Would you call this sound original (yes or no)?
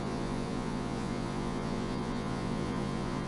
no